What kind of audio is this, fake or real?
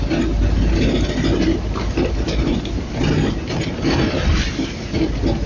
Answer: real